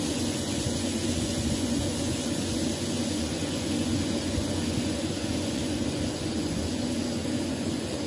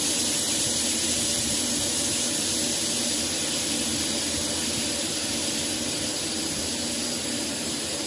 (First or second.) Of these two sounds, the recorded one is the second